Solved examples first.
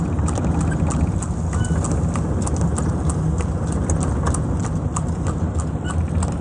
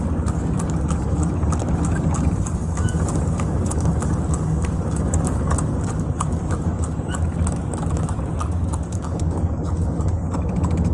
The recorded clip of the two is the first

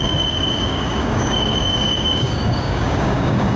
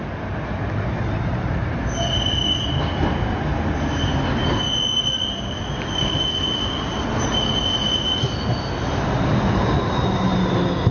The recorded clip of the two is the second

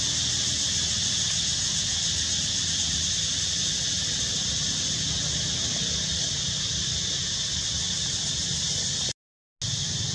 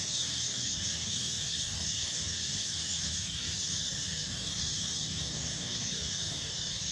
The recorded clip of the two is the first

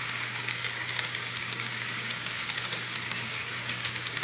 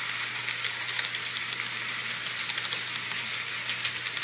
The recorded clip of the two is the second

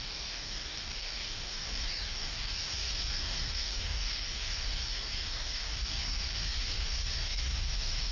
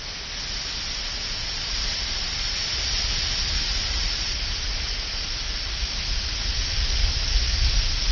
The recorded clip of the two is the second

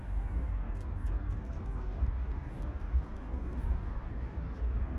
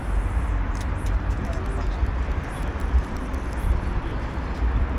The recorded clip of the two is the second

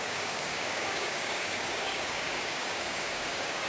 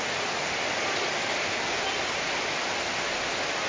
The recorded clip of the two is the second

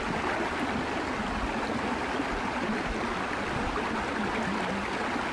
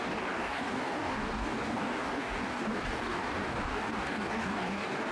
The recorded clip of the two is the first